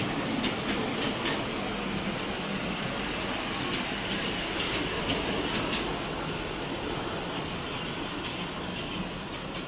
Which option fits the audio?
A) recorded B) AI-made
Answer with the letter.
A